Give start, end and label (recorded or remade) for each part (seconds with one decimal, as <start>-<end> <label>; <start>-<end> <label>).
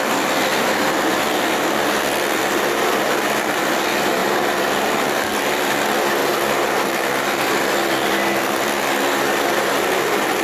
0.0-10.4 recorded